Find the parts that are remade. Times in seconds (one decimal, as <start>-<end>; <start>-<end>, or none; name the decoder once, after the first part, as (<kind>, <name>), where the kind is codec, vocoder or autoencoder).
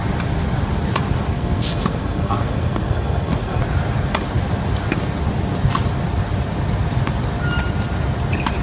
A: 1.3-3.6 (codec, SNAC)